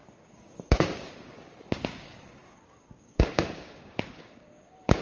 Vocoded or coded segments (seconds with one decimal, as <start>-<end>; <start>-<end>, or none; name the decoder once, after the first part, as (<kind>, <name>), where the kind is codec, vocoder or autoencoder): 0.0-5.0 (codec, DAC)